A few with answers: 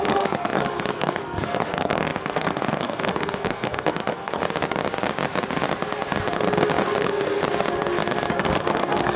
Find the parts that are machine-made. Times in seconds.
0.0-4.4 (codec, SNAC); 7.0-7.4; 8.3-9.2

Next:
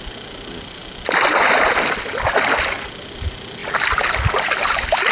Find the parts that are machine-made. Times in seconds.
none

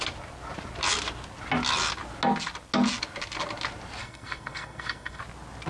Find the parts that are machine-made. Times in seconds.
4.0-5.2 (codec, SNAC)

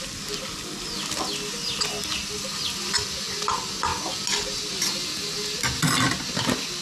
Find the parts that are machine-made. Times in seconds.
none

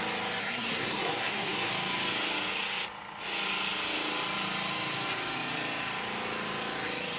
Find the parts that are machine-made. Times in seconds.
0.4-1.7 (codec, SNAC)

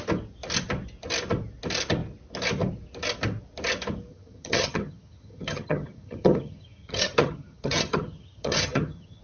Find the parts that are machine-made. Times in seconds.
4.1-9.2 (vocoder, HiFi-GAN)

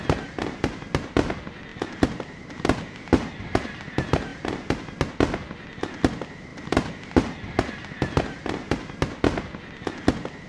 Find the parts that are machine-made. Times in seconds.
1.7-2.4 (vocoder, BigVGAN v2); 6.5-7.1

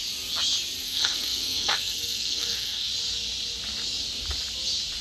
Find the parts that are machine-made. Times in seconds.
0.8-2.9 (codec, SNAC)